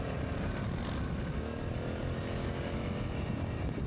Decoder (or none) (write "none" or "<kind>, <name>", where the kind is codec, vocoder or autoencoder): none